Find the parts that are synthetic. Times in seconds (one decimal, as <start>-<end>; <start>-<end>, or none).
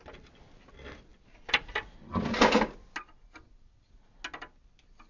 none